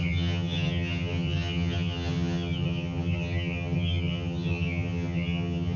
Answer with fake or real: fake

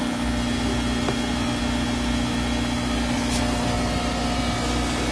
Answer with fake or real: real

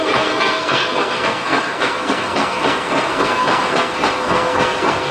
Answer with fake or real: fake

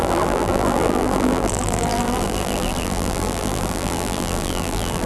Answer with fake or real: fake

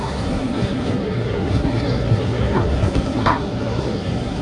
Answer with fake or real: fake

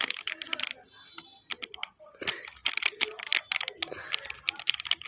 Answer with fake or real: real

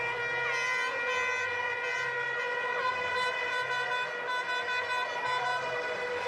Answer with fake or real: real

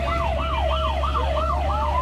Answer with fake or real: real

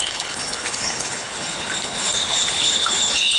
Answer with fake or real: fake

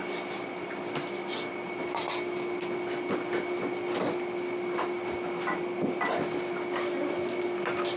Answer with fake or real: real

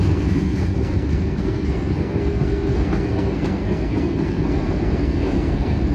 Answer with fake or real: fake